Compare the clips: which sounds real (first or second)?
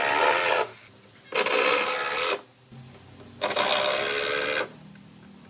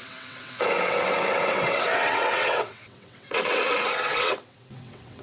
first